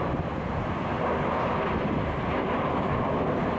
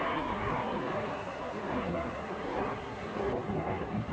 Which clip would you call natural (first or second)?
first